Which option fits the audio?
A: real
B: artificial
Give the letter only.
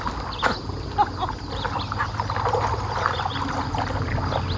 A